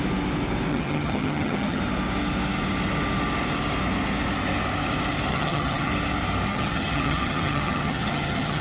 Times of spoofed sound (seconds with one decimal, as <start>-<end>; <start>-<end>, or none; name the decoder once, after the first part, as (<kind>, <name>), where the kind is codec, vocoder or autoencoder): 0.7-1.8 (vocoder, HiFi-GAN); 5.3-5.9; 6.5-8.6